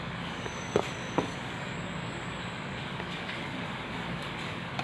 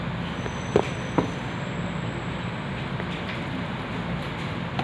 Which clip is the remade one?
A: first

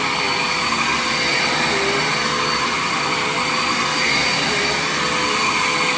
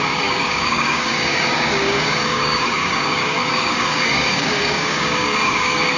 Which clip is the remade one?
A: second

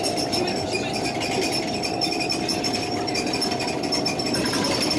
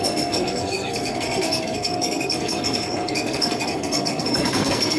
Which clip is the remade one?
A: second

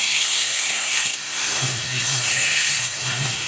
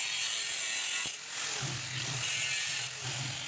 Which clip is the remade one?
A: first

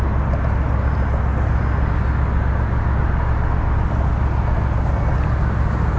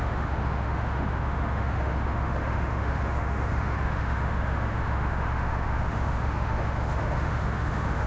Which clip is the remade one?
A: second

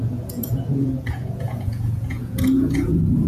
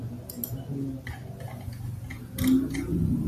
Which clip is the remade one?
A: first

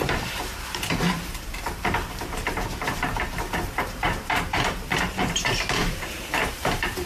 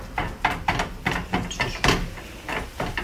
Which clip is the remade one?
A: first